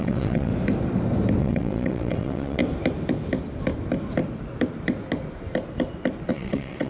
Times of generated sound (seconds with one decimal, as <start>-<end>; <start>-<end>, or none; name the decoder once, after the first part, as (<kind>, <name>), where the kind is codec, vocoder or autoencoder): 0.0-0.5 (vocoder, WaveNeXt); 1.4-2.6; 6.3-6.9